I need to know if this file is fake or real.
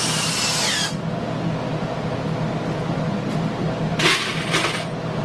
real